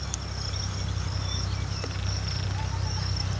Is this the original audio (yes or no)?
yes